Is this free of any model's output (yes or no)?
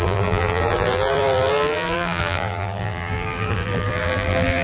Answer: no